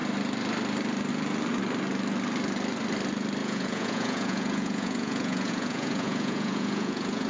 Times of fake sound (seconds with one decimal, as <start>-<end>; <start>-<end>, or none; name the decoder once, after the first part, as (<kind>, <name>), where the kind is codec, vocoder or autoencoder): 3.4-7.3 (vocoder, Vocos)